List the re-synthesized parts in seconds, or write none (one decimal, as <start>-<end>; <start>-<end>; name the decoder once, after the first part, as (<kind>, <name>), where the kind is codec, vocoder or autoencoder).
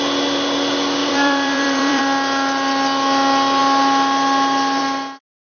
1.0-2.0 (vocoder, BigVGAN v2)